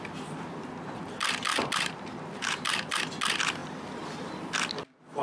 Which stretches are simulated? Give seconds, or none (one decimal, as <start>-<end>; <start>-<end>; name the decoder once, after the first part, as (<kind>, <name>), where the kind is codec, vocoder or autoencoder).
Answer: 1.5-3.0 (vocoder, BigVGAN v2)